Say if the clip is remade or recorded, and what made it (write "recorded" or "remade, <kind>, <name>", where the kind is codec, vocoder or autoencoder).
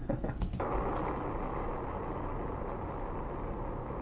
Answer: recorded